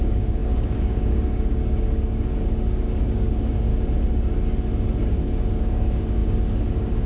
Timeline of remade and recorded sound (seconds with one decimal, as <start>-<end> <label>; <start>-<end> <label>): 0.0-3.7 remade; 3.7-5.0 recorded; 5.0-7.1 remade